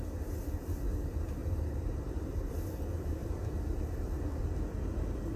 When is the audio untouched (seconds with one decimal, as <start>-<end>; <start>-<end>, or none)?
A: 0.0-1.4; 2.7-5.4

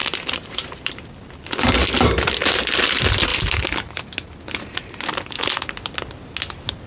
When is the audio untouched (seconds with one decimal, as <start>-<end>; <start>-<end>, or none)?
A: 0.9-6.9

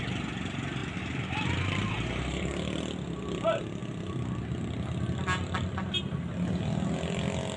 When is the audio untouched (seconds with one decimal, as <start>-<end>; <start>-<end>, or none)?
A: 0.0-0.8; 2.8-7.6

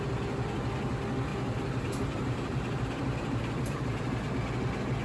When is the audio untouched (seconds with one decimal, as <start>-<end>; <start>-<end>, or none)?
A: 0.0-1.3; 4.3-5.0